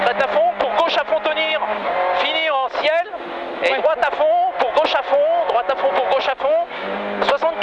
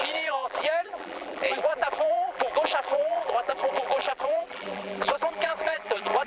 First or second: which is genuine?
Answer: first